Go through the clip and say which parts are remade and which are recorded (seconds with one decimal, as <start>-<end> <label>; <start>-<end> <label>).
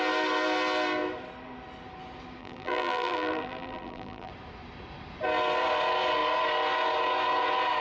0.0-2.4 recorded; 2.4-4.3 remade; 4.3-7.8 recorded